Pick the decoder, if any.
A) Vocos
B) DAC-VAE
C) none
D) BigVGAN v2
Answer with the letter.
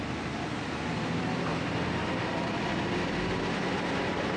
D